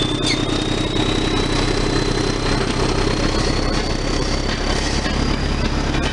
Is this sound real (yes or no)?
yes